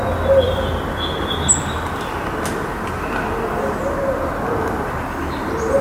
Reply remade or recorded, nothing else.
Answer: recorded